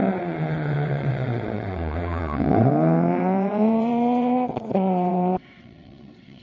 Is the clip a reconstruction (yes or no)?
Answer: yes